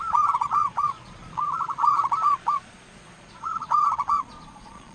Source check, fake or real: fake